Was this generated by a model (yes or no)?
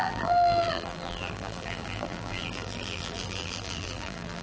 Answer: yes